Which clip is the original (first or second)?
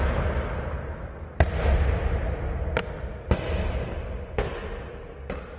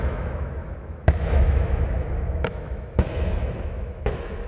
first